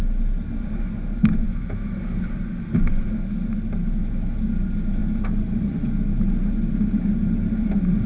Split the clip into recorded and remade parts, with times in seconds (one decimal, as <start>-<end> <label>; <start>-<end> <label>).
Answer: 0.0-1.2 recorded; 1.2-2.0 remade; 2.0-8.1 recorded